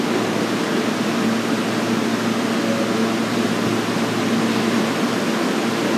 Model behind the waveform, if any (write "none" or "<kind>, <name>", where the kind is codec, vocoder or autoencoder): none